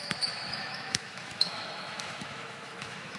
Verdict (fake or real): fake